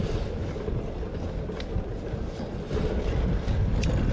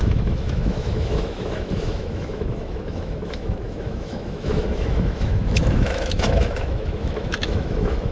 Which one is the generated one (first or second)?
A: second